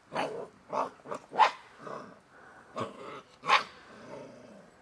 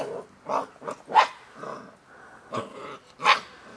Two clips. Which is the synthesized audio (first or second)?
first